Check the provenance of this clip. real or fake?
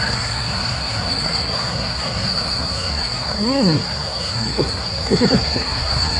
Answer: fake